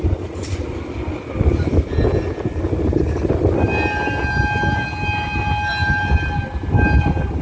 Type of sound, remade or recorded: recorded